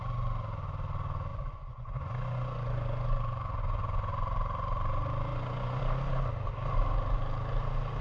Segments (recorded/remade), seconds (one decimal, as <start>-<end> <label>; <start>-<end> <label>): 0.0-1.3 recorded; 1.3-4.1 remade; 4.1-5.3 recorded; 5.3-5.8 remade; 5.8-8.0 recorded

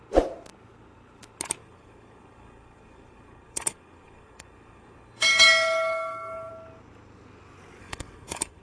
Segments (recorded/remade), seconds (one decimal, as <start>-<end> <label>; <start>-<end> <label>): 0.0-1.6 recorded; 1.6-6.5 remade; 6.5-7.8 recorded; 7.8-8.6 remade

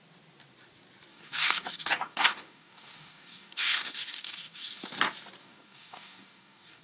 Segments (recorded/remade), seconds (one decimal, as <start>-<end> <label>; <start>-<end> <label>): 0.0-1.1 recorded; 1.1-4.8 remade; 4.8-5.4 recorded; 5.4-6.8 remade

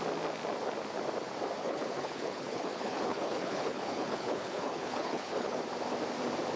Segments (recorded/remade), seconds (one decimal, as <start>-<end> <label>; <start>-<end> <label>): 0.0-1.6 recorded; 1.6-5.6 remade; 5.6-6.6 recorded